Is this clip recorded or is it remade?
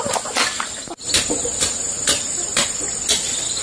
recorded